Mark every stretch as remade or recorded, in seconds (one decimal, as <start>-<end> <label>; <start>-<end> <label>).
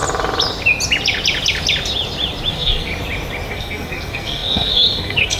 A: 0.0-2.5 recorded; 2.5-2.9 remade; 2.9-3.5 recorded; 3.5-5.4 remade